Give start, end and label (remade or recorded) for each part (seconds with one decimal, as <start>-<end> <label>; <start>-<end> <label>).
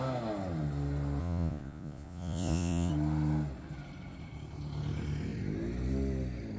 0.0-1.2 recorded; 1.2-2.9 remade; 2.9-6.6 recorded